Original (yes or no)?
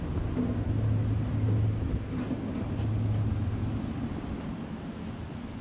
yes